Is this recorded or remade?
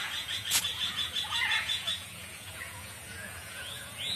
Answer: remade